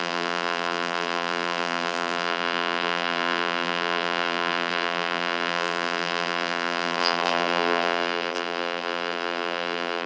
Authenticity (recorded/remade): remade